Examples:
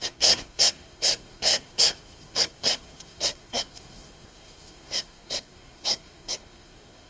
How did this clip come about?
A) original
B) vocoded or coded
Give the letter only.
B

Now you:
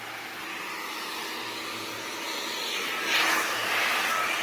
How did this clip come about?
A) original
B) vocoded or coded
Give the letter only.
A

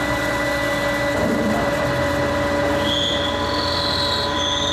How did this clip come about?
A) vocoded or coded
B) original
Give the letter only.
B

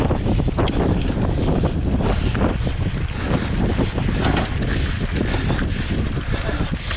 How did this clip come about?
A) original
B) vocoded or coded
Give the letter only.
A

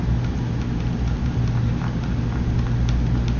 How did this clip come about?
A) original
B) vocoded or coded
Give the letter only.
A